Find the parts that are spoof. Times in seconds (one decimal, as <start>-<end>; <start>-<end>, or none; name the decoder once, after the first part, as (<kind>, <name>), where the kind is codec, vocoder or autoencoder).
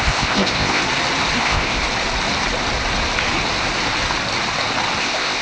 0.0-0.8 (codec, ZipCodec); 1.4-1.8; 5.0-5.4